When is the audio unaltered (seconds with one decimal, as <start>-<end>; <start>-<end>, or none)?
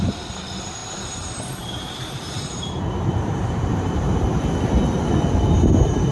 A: 0.0-0.8; 4.5-6.1